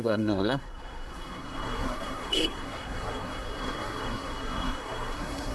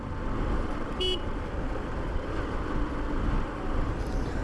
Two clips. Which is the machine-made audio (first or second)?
first